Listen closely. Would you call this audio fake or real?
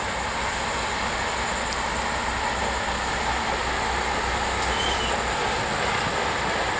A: real